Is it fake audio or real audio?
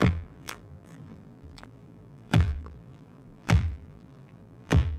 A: fake